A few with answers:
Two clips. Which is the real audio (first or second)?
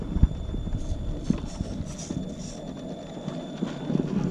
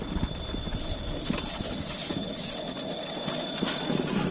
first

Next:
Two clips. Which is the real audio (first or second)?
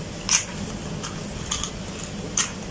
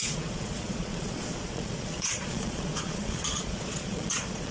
first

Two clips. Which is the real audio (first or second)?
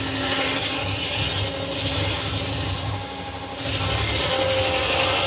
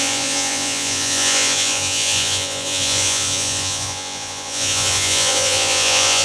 first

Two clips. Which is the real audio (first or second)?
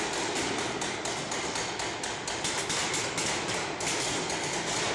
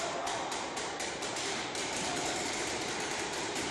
first